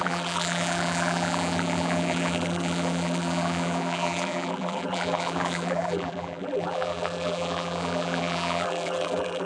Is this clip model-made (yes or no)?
yes